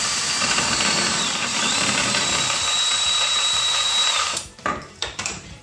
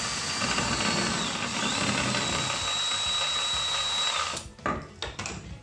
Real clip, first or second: second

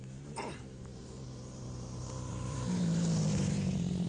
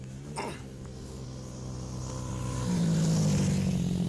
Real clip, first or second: second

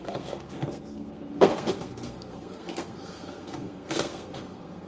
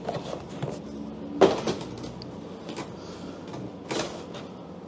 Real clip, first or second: second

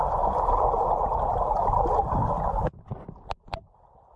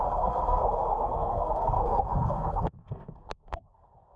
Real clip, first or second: first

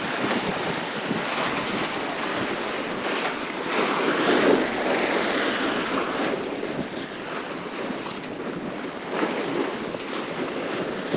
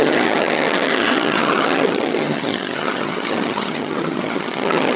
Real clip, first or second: first